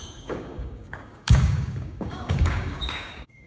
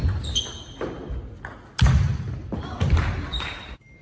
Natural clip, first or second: second